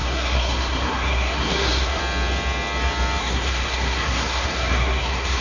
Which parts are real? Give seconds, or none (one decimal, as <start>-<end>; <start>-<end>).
2.0-3.2